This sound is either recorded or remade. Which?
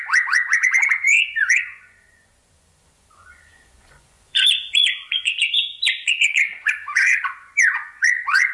remade